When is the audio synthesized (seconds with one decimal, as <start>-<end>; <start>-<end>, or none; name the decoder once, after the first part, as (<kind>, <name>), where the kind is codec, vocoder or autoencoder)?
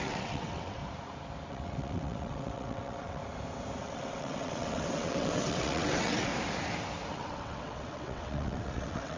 0.0-0.8 (vocoder, WaveNeXt); 1.5-3.2; 3.8-6.3; 7.1-9.2